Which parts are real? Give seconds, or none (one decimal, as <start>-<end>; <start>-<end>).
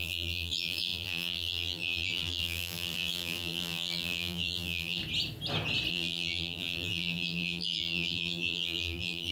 5.0-5.9